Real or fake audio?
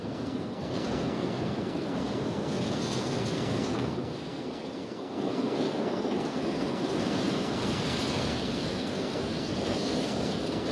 fake